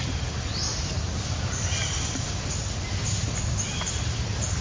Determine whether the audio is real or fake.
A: real